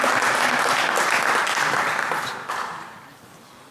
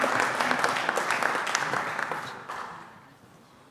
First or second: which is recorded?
second